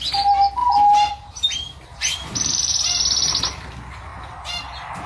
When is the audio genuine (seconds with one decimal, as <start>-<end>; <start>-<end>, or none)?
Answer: 0.0-0.6; 2.7-5.1